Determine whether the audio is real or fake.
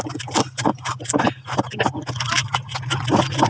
real